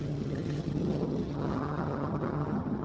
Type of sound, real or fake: fake